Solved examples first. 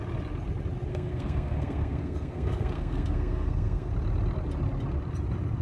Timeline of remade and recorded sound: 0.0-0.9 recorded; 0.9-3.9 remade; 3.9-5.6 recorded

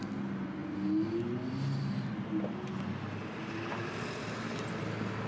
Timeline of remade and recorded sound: 0.0-5.3 recorded